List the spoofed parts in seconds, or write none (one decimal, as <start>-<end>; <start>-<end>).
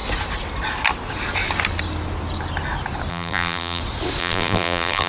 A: 3.1-3.8; 4.2-5.1